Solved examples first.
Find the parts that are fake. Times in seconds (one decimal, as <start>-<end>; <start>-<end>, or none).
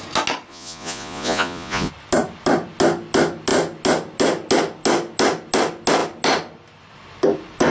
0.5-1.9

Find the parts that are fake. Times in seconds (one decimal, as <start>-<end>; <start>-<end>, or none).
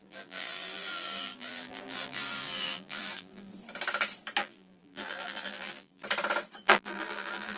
0.0-3.5; 4.4-6.0; 6.6-7.6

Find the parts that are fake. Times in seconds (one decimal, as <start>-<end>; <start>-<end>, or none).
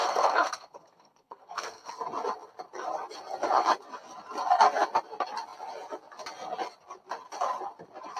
0.0-1.9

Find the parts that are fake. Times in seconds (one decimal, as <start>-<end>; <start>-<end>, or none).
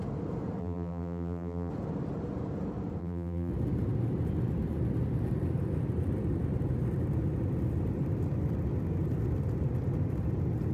0.6-1.7; 3.0-3.5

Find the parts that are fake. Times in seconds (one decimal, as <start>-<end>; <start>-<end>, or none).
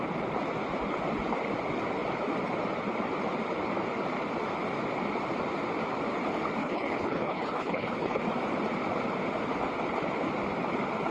6.6-8.2